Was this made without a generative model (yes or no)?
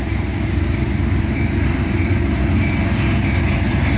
no